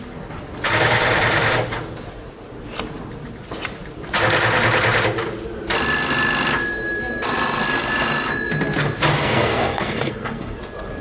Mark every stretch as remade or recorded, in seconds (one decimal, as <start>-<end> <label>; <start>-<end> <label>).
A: 0.0-9.2 recorded; 9.2-10.6 remade; 10.6-11.0 recorded

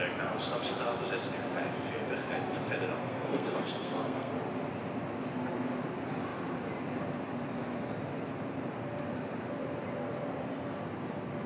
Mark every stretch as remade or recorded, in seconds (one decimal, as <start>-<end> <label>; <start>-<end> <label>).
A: 0.0-3.0 recorded; 3.0-4.3 remade; 4.3-11.5 recorded

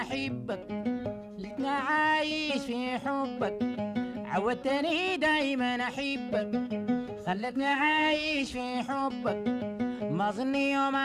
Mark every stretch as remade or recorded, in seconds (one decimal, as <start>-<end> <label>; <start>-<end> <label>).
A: 0.0-1.0 recorded; 1.0-1.5 remade; 1.5-6.4 recorded; 6.4-8.6 remade; 8.6-11.0 recorded

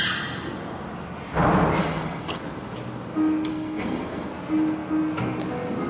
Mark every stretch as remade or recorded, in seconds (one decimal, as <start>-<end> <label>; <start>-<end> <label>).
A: 0.0-1.8 recorded; 1.8-2.4 remade; 2.4-3.5 recorded; 3.5-4.3 remade; 4.3-5.9 recorded

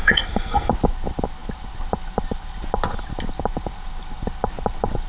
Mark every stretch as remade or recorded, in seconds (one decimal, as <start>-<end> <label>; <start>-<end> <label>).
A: 0.0-0.7 remade; 0.7-5.1 recorded